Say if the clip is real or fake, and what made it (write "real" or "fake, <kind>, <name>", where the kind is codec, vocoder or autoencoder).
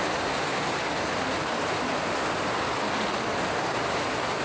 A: real